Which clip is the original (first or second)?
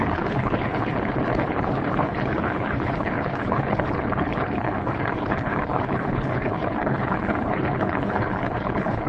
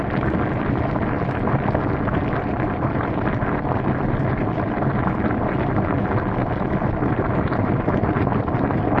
second